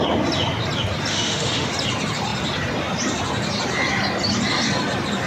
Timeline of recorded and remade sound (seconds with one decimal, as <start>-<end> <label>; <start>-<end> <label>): 0.0-1.1 recorded; 1.1-1.7 remade; 1.7-5.3 recorded